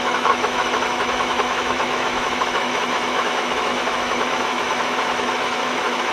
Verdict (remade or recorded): remade